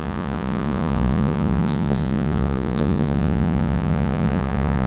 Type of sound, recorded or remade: remade